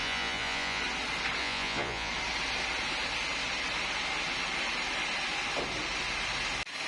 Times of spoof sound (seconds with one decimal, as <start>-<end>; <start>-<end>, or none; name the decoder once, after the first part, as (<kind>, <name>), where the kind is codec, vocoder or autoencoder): 0.0-0.8 (vocoder, Vocos); 1.4-2.1